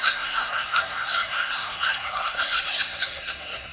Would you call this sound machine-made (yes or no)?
yes